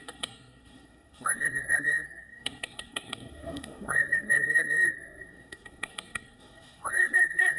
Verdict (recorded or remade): remade